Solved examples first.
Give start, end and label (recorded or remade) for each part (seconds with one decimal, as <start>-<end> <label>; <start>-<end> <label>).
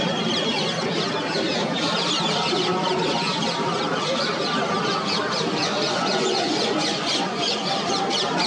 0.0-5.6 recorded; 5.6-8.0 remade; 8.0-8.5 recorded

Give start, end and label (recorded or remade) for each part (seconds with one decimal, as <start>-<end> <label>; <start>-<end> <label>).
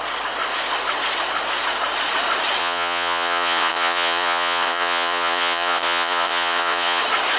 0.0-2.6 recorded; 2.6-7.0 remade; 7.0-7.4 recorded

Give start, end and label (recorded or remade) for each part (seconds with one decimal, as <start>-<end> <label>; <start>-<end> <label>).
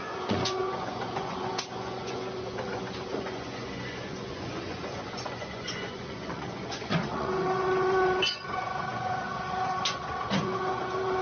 0.0-11.2 remade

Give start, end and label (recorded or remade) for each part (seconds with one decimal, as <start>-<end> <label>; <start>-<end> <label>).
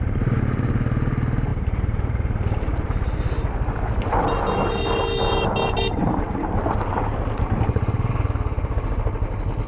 0.0-1.5 recorded; 1.5-3.5 remade; 3.5-6.0 recorded; 6.0-6.6 remade; 6.6-9.7 recorded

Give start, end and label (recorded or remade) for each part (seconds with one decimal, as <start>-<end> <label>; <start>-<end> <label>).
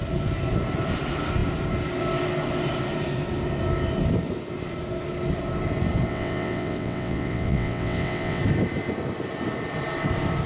0.0-6.1 recorded; 6.1-8.4 remade; 8.4-10.5 recorded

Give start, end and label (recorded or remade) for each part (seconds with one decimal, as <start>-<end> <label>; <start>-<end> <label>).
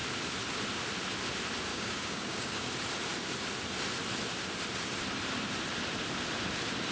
0.0-1.7 recorded; 1.7-2.7 remade; 2.7-6.9 recorded